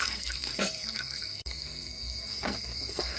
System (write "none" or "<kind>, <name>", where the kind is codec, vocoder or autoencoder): codec, SNAC